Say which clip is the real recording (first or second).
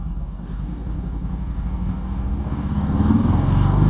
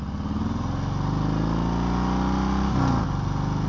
second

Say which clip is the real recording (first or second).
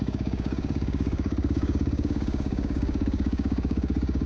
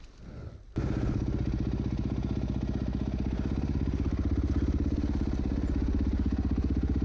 second